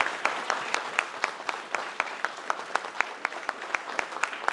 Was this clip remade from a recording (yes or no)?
yes